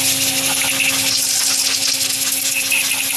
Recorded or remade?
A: recorded